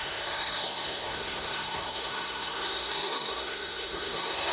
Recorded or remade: remade